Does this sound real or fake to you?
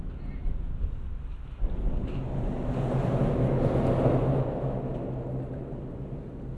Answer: real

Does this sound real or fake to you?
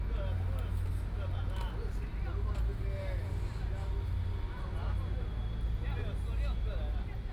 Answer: real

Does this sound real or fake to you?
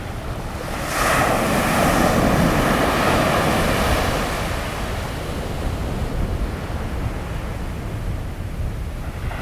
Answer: real